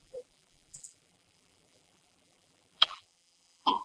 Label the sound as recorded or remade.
remade